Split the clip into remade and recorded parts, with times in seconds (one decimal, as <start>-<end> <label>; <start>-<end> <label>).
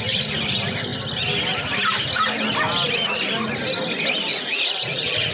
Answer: 0.0-4.3 recorded; 4.3-5.3 remade